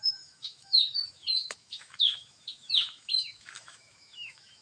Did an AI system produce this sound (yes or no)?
yes